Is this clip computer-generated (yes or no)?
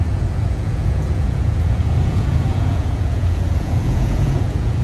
yes